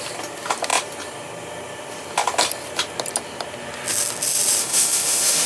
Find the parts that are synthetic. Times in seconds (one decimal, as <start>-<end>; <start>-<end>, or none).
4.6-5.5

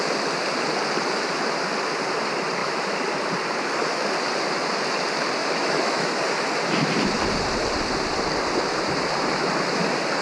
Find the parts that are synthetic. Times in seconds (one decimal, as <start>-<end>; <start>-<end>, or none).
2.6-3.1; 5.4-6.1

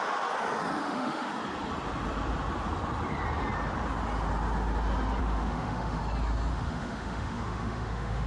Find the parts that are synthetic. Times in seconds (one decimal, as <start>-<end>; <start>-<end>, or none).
0.8-1.3; 5.2-6.0; 6.5-8.3

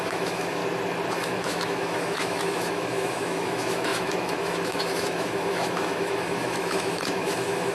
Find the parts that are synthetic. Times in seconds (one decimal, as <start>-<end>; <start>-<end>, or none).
0.0-0.6; 1.1-7.7

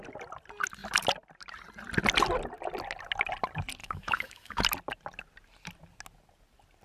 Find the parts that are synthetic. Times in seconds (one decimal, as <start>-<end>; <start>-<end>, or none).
3.8-4.6

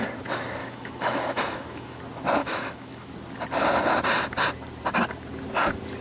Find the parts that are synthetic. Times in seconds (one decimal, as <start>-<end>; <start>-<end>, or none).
0.6-2.0; 2.4-3.1

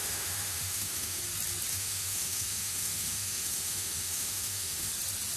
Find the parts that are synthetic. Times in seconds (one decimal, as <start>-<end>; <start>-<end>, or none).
0.0-1.2; 1.7-4.9